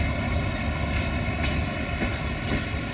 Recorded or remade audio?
recorded